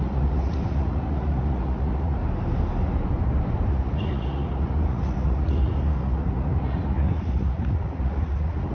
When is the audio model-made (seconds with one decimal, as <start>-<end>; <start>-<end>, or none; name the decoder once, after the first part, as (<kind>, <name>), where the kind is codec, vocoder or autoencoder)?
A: 0.0-2.2 (vocoder, Vocos); 3.7-8.7